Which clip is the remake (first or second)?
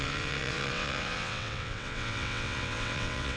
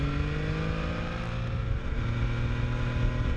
first